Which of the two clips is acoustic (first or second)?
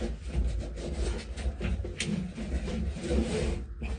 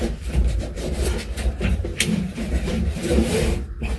first